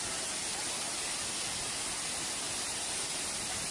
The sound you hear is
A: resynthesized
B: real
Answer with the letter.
B